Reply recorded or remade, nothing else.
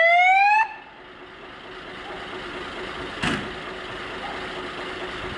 recorded